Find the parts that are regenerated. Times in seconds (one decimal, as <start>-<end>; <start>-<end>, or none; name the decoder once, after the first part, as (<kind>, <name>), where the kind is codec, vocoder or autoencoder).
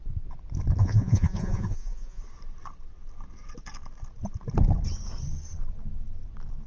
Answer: 0.8-2.2 (vocoder, Vocos)